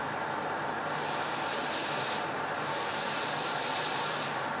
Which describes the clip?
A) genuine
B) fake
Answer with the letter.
A